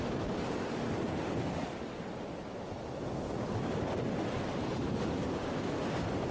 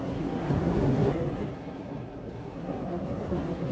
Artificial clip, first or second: second